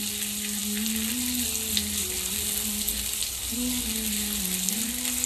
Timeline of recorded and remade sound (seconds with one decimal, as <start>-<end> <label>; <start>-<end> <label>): 0.0-5.3 recorded